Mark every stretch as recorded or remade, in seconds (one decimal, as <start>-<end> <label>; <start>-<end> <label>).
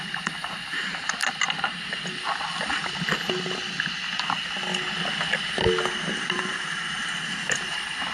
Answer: 0.0-1.2 remade; 1.2-5.9 recorded; 5.9-8.1 remade